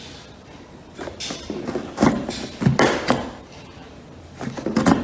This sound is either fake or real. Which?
real